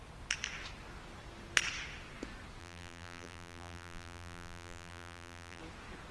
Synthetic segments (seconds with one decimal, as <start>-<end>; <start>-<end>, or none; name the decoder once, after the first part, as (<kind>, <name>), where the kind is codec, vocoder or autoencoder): 2.6-5.6 (vocoder, BigVGAN v2)